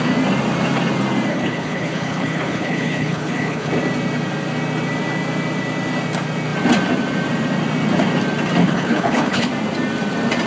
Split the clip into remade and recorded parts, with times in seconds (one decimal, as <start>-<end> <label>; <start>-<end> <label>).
0.0-1.3 recorded; 1.3-3.7 remade; 3.7-8.6 recorded; 8.6-9.5 remade; 9.5-10.5 recorded